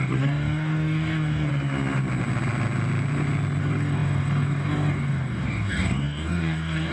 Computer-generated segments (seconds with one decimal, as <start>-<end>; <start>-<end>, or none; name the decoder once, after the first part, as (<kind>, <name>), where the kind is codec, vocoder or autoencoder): 0.0-1.5 (codec, DAC); 3.6-6.9